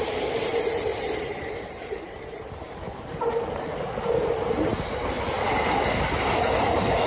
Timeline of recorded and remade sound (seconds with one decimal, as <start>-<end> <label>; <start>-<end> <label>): 0.0-0.9 recorded; 0.9-5.2 remade; 5.2-7.1 recorded